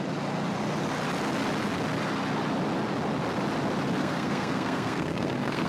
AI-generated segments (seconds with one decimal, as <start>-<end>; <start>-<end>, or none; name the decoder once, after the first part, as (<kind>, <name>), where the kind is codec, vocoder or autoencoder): 4.0-5.7 (codec, SNAC)